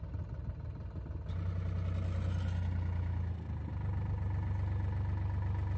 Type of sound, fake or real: real